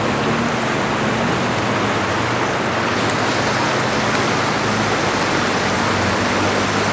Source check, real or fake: real